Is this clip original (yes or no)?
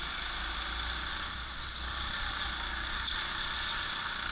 yes